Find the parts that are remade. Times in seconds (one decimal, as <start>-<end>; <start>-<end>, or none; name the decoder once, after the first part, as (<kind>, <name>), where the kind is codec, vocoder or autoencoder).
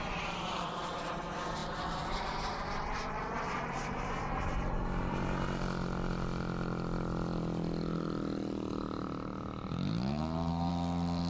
1.6-4.2 (vocoder, BigVGAN v2); 8.7-10.7